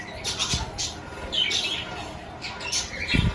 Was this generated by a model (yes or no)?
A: no